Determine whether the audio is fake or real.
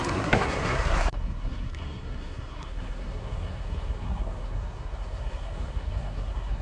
fake